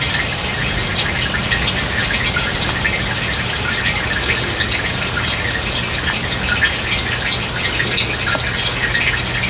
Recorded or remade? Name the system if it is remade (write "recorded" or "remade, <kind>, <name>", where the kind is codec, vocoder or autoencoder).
recorded